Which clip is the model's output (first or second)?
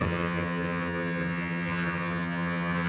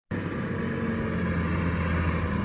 first